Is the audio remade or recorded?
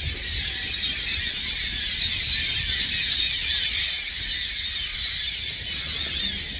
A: recorded